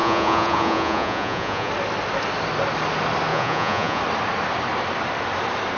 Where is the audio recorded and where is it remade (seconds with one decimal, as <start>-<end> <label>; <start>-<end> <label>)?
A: 0.0-1.7 remade; 1.7-3.3 recorded; 3.3-4.0 remade; 4.0-5.8 recorded